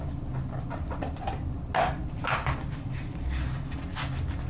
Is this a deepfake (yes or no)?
no